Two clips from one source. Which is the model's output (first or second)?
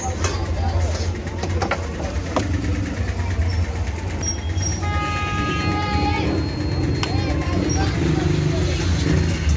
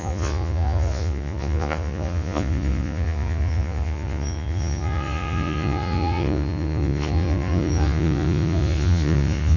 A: second